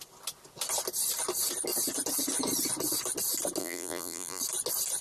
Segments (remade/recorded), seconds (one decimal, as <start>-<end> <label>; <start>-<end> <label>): 0.0-3.6 recorded; 3.6-4.4 remade; 4.4-5.0 recorded